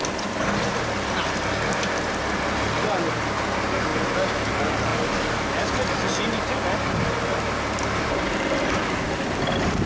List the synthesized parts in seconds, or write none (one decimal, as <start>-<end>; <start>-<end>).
none